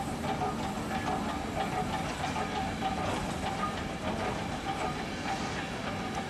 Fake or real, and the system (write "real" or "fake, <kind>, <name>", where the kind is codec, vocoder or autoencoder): real